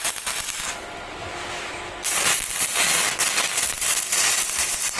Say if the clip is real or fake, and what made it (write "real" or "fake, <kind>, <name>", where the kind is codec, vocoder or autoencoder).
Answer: real